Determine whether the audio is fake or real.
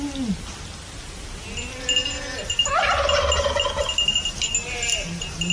real